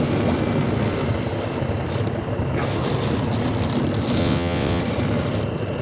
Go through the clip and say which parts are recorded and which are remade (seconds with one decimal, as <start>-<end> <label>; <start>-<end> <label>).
0.0-4.2 recorded; 4.2-4.8 remade; 4.8-5.8 recorded